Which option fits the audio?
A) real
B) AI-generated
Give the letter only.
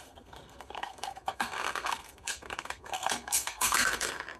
B